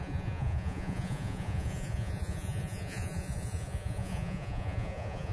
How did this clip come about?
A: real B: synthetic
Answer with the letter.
B